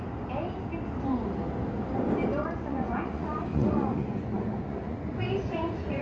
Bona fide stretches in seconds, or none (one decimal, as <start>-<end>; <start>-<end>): 0.0-2.4